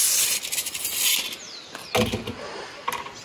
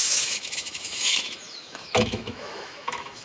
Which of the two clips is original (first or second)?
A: first